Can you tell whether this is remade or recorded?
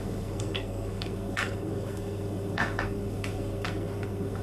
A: remade